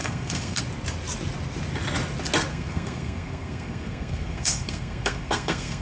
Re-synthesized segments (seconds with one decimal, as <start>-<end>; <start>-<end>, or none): 0.0-0.6; 2.5-5.8